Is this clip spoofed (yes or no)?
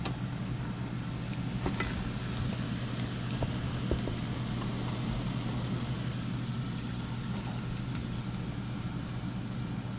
no